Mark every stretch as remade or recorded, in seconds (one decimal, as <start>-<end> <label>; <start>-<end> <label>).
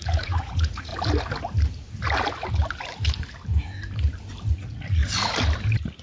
0.0-0.9 remade; 0.9-4.5 recorded; 4.5-5.0 remade; 5.0-6.0 recorded